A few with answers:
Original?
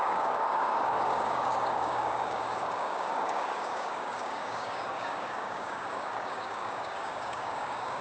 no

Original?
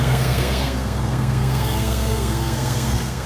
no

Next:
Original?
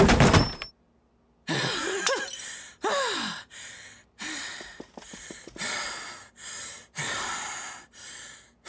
yes